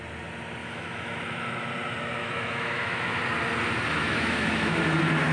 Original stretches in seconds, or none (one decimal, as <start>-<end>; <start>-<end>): 0.0-0.6; 1.7-2.2; 3.2-4.0; 4.8-5.3